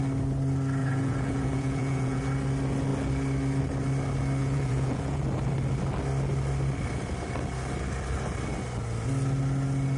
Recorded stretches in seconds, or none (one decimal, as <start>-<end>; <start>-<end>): 0.0-0.8; 2.2-4.4; 5.2-10.0